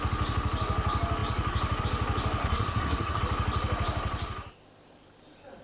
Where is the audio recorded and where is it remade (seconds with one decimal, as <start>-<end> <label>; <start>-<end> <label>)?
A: 0.0-2.4 recorded; 2.4-3.2 remade; 3.2-5.6 recorded